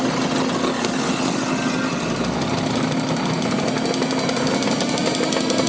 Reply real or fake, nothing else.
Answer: real